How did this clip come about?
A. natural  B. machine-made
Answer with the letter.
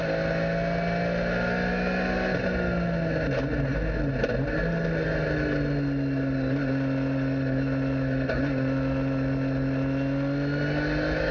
A